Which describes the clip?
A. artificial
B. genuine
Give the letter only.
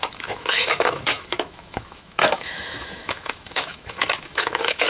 A